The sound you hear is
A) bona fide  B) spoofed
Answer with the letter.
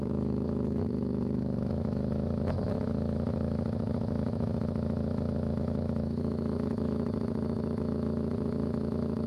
B